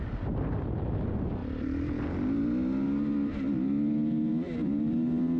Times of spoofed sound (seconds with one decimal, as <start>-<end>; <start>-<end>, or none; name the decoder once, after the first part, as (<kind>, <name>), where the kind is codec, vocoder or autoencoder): none